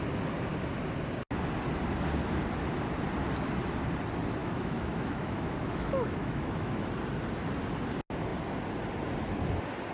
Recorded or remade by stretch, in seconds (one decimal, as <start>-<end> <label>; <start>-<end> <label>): 0.0-4.4 recorded; 4.4-6.9 remade; 6.9-9.9 recorded